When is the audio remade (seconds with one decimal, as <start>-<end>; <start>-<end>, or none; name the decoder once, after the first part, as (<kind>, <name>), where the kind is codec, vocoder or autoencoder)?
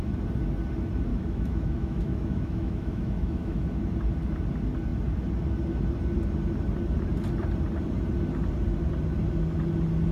1.1-3.6 (autoencoder, DAC-VAE)